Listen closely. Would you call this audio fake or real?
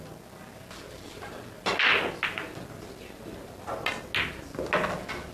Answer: real